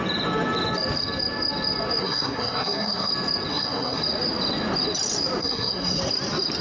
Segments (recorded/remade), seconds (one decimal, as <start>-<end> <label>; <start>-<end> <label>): 0.0-2.0 recorded; 2.0-3.1 remade; 3.1-3.5 recorded; 3.5-4.0 remade; 4.0-5.4 recorded; 5.4-6.0 remade; 6.0-6.6 recorded

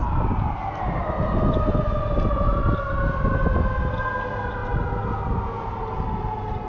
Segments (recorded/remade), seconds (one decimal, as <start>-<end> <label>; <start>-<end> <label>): 0.0-6.7 recorded

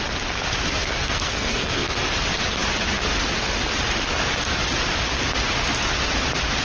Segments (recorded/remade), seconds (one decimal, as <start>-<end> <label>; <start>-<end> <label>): 0.0-0.8 recorded; 0.8-1.9 remade; 1.9-6.6 recorded

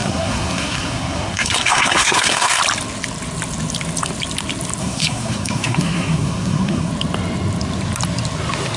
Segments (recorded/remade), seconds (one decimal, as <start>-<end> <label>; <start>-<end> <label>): 0.0-2.6 remade; 2.6-4.8 recorded; 4.8-6.9 remade; 6.9-8.8 recorded

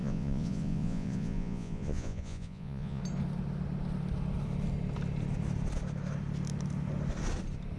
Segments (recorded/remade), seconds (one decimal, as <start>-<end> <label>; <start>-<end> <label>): 0.0-3.0 remade; 3.0-7.8 recorded

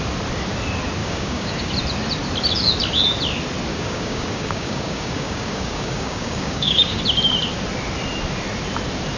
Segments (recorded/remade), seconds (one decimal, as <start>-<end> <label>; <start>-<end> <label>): 0.0-1.0 recorded; 1.0-1.7 remade; 1.7-3.7 recorded; 3.7-7.0 remade; 7.0-9.2 recorded

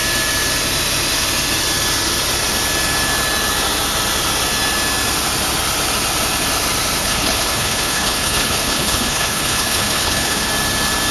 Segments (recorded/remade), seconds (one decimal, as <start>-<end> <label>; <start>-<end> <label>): 0.0-7.0 recorded; 7.0-10.5 remade; 10.5-11.1 recorded

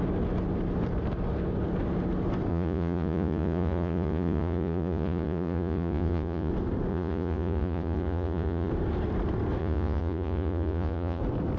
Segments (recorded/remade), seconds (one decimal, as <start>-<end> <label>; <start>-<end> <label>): 0.0-2.5 recorded; 2.5-6.5 remade; 6.5-6.9 recorded; 6.9-8.7 remade; 8.7-9.6 recorded; 9.6-11.2 remade; 11.2-11.6 recorded